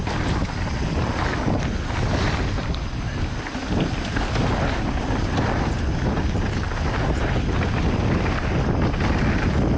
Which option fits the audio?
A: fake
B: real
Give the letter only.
B